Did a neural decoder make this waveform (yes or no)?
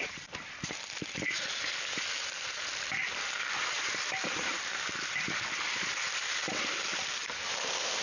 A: yes